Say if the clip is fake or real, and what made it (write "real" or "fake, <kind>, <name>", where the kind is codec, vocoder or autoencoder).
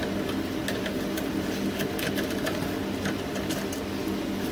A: real